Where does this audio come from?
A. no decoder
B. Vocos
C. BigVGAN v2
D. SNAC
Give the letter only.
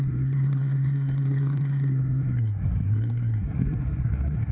D